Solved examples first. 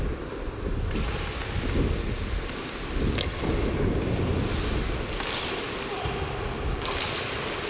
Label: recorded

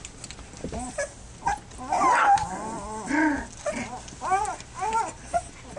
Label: recorded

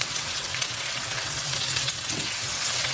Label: remade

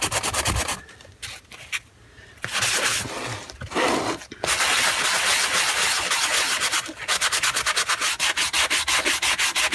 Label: recorded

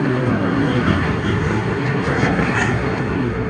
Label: remade